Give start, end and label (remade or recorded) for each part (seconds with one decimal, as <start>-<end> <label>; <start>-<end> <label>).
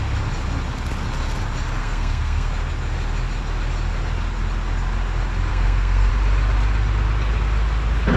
0.0-1.8 recorded; 1.8-2.5 remade; 2.5-5.5 recorded; 5.5-6.1 remade; 6.1-8.2 recorded